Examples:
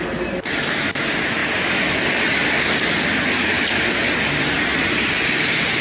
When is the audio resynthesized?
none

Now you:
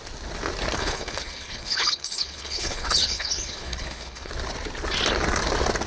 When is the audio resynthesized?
0.8-4.3 (codec, HILCodec)